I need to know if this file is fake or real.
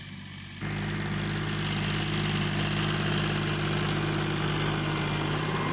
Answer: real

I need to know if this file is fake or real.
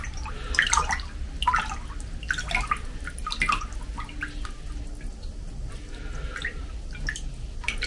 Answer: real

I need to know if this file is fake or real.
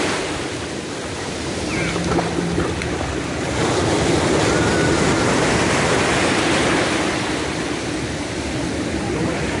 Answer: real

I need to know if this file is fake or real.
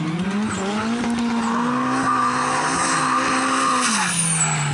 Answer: real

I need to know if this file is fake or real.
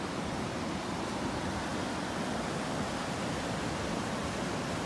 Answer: real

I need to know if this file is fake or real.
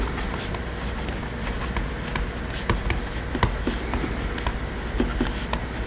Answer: real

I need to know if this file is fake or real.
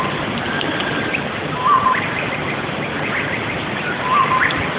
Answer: real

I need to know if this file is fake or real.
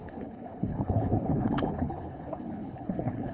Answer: fake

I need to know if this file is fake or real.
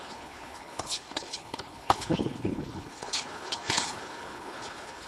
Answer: fake